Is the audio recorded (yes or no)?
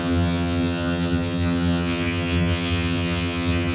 no